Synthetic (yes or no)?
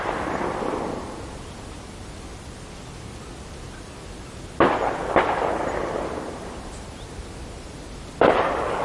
no